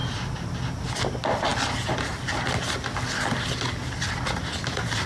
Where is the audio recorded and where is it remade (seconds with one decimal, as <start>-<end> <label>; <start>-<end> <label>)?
0.0-5.1 recorded